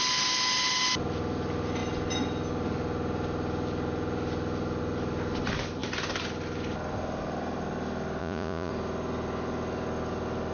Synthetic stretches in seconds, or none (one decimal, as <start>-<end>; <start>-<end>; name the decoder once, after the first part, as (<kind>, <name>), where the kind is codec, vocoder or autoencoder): 8.2-8.7 (vocoder, Vocos)